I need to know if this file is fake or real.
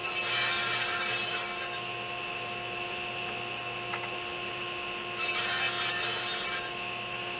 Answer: real